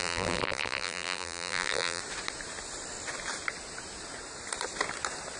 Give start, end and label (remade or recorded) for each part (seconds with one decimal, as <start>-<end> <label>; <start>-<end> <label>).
0.0-2.0 remade; 2.0-5.4 recorded